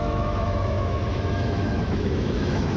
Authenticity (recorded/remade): remade